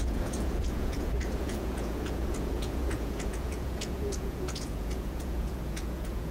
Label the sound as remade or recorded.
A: remade